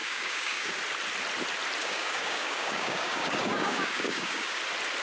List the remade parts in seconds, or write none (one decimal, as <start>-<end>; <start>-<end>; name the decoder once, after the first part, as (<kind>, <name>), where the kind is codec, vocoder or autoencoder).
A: 0.0-0.8 (codec, DAC); 1.8-4.6